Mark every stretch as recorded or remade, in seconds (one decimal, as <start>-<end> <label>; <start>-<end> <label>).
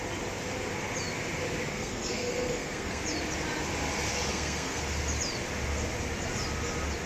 0.0-1.7 recorded; 1.7-3.0 remade; 3.0-4.3 recorded; 4.3-4.8 remade; 4.8-7.1 recorded